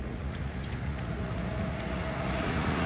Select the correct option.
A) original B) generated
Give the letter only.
B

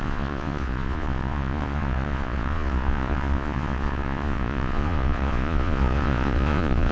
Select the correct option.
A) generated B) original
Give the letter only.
A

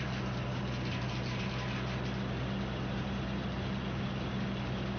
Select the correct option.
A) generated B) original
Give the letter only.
B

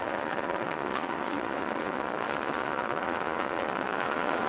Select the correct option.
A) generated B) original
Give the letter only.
A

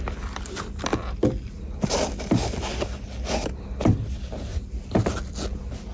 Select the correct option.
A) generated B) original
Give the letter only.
B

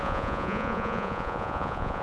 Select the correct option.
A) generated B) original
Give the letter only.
A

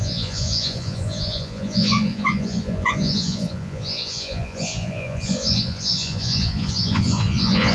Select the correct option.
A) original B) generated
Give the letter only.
B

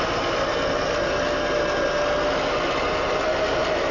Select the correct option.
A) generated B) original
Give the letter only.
B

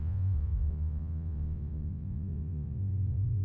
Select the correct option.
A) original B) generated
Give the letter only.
B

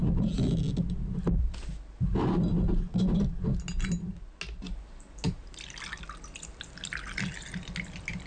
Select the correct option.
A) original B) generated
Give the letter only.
A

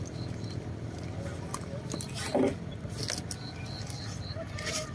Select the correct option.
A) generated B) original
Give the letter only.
B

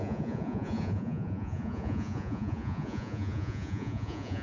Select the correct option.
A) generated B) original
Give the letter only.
A